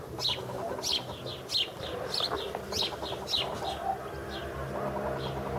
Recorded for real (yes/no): yes